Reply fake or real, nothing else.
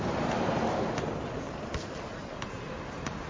fake